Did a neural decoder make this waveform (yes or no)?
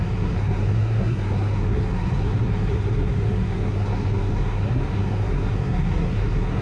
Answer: yes